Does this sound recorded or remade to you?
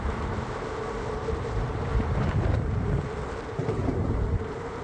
remade